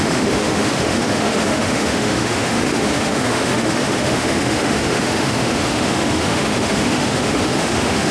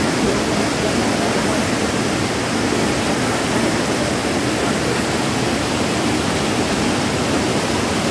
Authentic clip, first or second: second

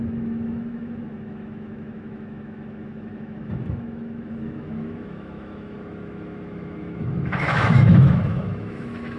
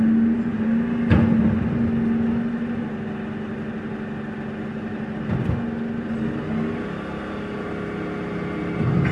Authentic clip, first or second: second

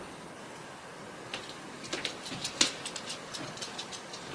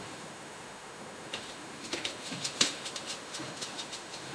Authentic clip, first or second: first